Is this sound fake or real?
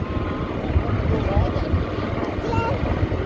real